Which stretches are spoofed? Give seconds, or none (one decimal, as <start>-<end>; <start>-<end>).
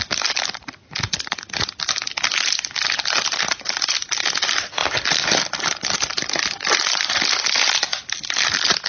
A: none